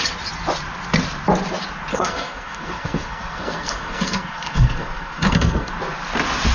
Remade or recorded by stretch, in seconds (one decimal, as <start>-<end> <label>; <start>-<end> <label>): 0.0-1.9 recorded; 1.9-5.7 remade; 5.7-6.5 recorded